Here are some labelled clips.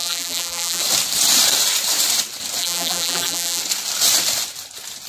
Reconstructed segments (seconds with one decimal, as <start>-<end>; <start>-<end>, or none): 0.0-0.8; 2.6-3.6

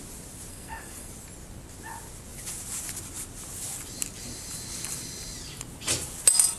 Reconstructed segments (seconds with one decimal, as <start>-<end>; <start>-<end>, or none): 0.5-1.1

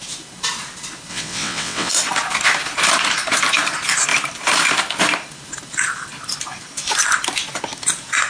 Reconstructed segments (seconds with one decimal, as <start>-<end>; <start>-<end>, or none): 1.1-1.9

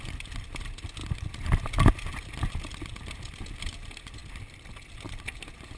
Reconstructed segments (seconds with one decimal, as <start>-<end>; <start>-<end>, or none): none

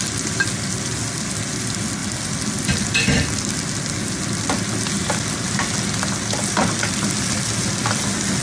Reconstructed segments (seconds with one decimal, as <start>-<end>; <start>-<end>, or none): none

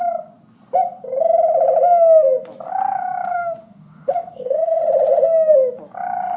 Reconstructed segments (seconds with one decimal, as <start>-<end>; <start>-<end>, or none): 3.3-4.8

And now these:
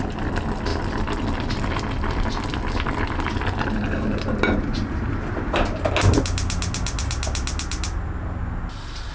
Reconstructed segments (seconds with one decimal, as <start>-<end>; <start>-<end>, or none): none

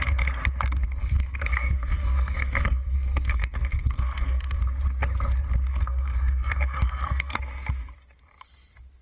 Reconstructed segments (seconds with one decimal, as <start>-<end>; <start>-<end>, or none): 1.0-4.6; 5.7-7.4